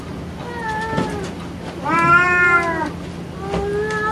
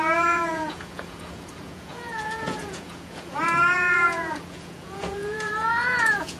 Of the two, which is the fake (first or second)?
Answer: second